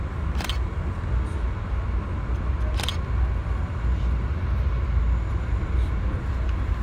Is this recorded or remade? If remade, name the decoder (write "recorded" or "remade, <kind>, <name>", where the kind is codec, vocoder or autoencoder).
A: recorded